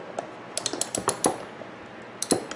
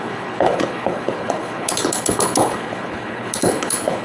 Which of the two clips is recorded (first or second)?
first